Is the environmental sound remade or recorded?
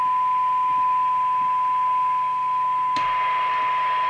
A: recorded